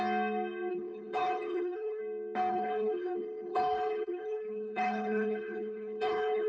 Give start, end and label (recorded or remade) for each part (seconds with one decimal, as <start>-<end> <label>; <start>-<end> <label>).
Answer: 0.0-0.7 recorded; 0.7-2.0 remade; 2.0-2.5 recorded; 2.5-6.5 remade